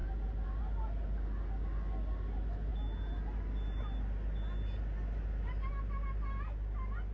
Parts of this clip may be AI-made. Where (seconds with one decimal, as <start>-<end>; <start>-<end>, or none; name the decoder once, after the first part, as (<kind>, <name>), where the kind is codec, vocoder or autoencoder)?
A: none

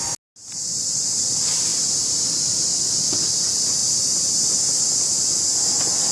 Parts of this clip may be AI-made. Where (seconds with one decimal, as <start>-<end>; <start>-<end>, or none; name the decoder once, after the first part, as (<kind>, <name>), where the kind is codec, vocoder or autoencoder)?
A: none